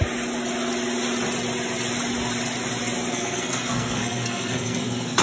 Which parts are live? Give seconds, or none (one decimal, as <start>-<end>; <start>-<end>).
0.0-3.1